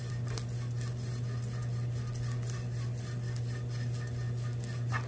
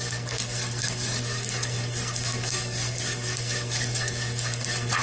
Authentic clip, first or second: first